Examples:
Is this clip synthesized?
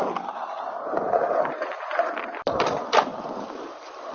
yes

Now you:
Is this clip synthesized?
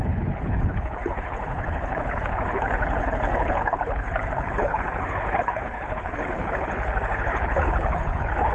yes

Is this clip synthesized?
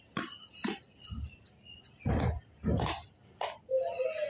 no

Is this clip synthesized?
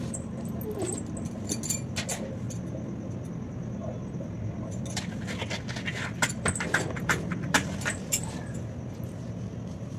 no